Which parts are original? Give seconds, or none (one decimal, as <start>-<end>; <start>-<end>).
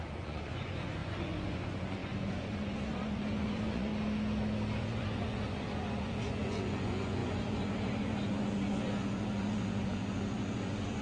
3.9-4.8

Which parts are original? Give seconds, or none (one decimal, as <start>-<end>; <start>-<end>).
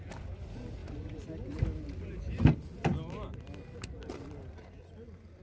0.0-5.4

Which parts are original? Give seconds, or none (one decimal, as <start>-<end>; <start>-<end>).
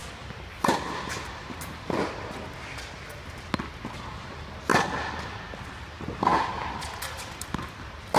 0.0-8.2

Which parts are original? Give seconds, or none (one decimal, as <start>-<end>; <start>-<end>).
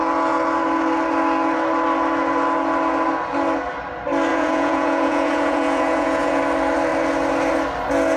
0.0-4.3; 6.4-8.2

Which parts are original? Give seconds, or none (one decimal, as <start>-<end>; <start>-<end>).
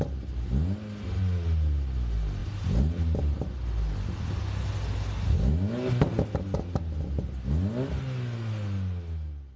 0.0-9.6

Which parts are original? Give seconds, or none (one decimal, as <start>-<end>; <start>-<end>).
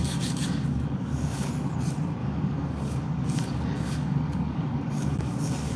1.5-2.2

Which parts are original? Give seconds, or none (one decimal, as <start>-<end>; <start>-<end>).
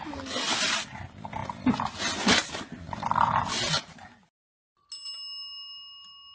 0.0-6.3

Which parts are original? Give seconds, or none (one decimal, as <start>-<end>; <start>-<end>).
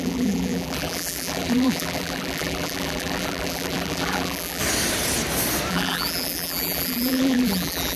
4.6-5.7